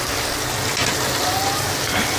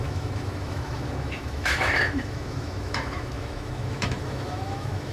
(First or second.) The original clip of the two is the first